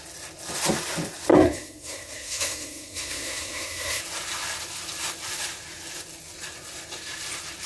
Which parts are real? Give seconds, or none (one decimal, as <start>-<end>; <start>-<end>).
0.0-1.3; 4.0-7.7